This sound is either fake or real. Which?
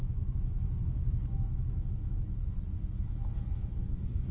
fake